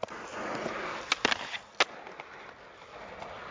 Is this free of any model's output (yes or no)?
yes